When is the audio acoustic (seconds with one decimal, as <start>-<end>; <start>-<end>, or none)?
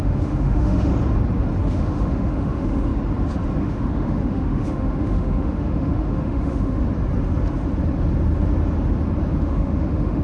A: 0.9-1.6; 2.9-3.6; 6.8-9.4